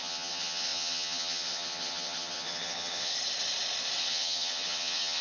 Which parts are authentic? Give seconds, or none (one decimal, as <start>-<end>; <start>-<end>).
3.1-4.0